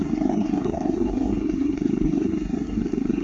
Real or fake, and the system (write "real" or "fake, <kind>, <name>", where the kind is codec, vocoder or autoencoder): fake, codec, SNAC